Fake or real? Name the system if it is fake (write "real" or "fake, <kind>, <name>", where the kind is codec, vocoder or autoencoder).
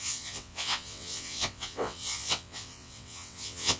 fake, vocoder, WaveNeXt